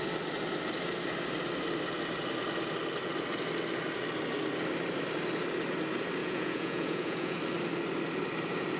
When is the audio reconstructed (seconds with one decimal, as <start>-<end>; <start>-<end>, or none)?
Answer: 6.2-7.4